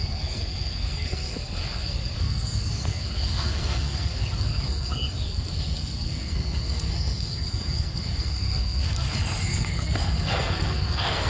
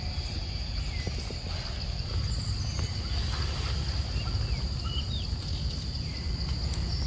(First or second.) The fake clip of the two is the first